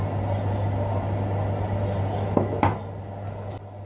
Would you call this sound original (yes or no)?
yes